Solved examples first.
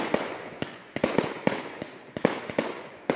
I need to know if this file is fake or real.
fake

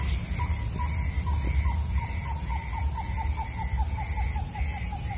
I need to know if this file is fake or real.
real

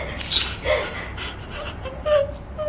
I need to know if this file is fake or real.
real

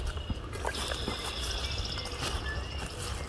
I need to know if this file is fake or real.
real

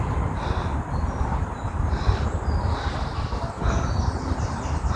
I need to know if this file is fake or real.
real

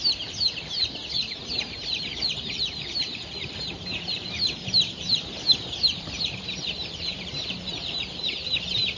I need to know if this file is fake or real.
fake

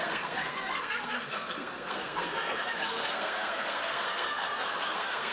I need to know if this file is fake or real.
fake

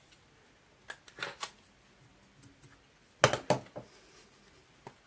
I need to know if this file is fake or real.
real